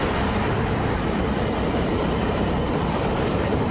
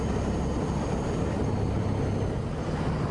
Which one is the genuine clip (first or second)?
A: second